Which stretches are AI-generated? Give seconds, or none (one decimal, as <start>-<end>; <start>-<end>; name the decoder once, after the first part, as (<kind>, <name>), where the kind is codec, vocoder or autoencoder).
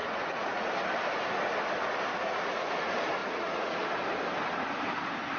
0.0-0.7 (vocoder, Vocos); 2.1-2.7; 3.2-3.8